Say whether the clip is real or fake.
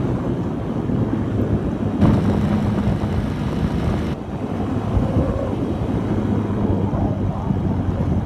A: real